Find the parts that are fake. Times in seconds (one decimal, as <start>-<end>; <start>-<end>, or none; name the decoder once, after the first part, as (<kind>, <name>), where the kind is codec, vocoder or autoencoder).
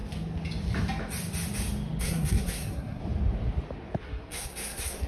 2.0-3.0 (codec, SNAC); 4.0-5.1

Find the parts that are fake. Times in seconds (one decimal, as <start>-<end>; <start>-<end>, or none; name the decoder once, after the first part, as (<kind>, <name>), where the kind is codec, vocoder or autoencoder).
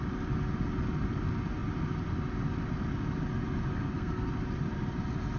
3.7-4.3 (codec, SNAC)